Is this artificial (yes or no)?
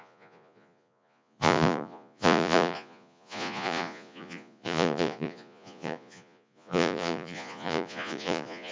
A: yes